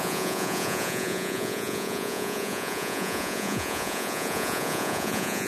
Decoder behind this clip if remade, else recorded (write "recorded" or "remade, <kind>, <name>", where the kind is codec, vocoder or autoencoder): remade, vocoder, Vocos